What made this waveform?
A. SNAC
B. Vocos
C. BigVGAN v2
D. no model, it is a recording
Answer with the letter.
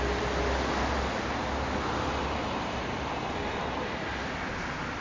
D